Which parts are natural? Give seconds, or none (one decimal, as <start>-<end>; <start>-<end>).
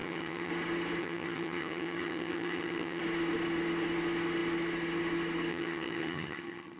0.5-1.0; 3.0-5.5